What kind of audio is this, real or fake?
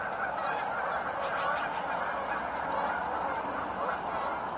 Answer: real